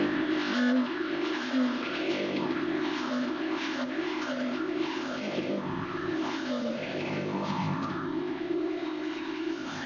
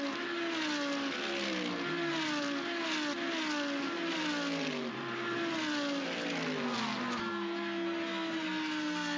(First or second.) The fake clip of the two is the first